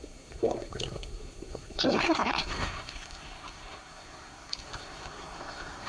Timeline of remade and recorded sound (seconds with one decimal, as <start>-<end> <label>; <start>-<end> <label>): 0.0-5.9 remade